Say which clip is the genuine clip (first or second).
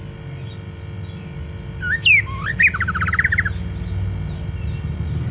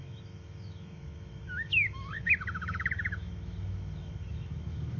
first